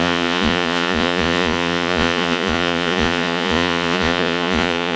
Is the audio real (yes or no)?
no